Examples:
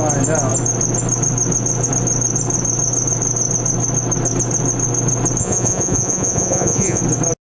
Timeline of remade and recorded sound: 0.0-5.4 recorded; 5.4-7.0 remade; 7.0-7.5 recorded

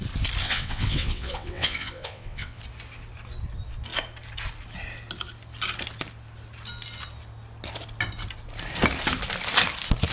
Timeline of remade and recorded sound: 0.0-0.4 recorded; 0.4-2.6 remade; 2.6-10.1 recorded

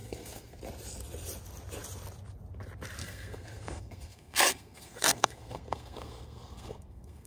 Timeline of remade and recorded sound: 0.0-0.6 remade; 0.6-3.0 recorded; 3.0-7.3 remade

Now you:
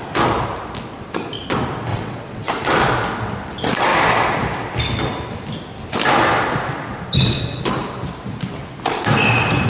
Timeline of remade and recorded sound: 0.0-1.9 recorded; 1.9-2.5 remade; 2.5-9.7 recorded